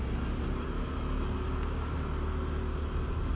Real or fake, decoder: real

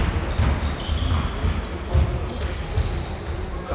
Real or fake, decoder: real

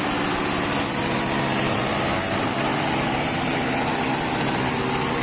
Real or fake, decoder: real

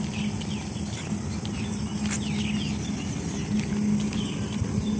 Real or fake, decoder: real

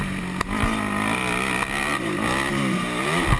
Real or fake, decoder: real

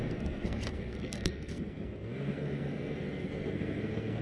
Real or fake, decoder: fake, codec, SNAC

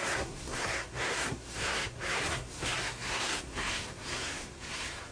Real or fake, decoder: fake, codec, SNAC